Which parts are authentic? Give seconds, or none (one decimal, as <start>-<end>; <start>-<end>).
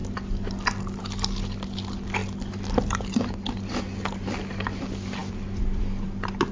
0.0-6.5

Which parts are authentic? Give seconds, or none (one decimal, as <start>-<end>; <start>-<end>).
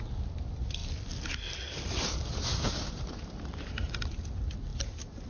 0.0-2.5; 3.8-4.7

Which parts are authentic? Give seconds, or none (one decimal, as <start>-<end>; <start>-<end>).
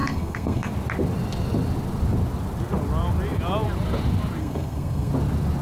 0.7-4.4; 5.1-5.6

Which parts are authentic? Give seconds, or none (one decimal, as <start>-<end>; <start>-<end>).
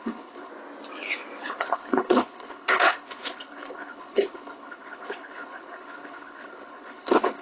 0.5-1.5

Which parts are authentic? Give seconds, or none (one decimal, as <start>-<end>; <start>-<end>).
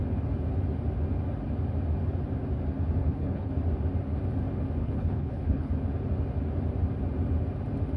0.0-3.0; 3.5-4.8; 5.7-8.0